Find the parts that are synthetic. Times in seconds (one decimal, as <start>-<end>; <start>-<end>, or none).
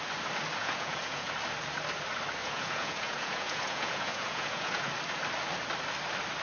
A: 0.6-1.3; 2.4-4.9